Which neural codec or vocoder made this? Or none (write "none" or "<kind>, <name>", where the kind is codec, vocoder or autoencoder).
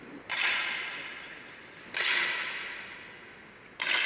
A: none